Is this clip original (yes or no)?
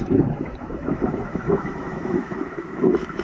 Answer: no